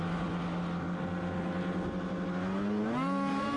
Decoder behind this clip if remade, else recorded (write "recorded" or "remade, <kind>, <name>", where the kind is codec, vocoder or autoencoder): recorded